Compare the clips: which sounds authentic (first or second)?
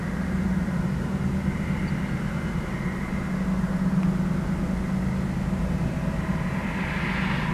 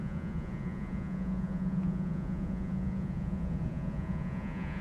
first